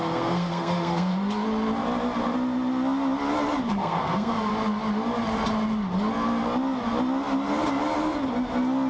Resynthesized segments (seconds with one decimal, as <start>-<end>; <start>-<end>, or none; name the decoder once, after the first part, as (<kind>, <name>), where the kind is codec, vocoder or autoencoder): 0.0-1.1 (codec, SNAC); 3.7-4.5